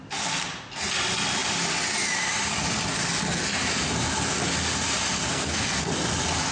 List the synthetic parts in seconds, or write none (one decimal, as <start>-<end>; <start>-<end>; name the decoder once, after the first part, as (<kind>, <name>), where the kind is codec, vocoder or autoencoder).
5.3-5.9 (codec, SNAC)